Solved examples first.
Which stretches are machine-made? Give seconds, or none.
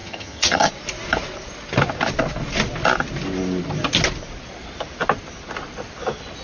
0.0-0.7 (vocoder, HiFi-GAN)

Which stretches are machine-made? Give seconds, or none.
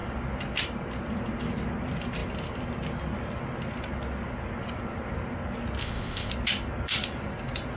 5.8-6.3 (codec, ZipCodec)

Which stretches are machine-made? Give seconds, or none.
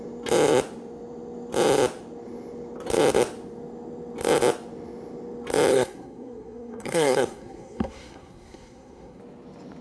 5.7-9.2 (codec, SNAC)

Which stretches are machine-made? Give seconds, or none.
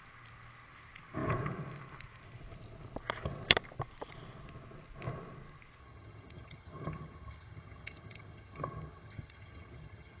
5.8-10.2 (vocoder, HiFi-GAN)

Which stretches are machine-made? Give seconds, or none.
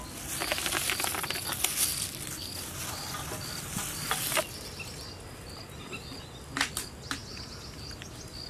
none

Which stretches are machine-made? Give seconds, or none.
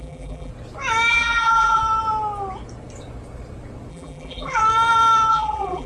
0.0-0.5 (vocoder, BigVGAN v2); 1.1-1.8; 3.9-4.6; 5.3-5.9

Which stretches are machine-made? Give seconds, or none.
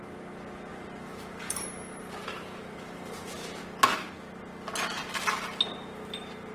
0.7-3.6 (vocoder, BigVGAN v2)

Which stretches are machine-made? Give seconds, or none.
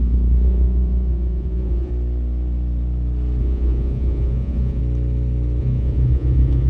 0.0-1.9 (vocoder, Vocos); 3.4-4.8; 5.6-6.7